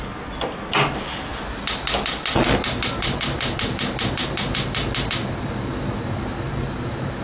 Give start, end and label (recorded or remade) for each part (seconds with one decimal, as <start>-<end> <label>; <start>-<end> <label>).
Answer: 0.0-7.2 recorded